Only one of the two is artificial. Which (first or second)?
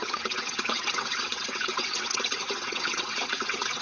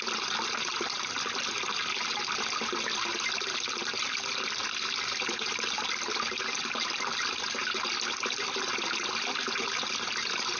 first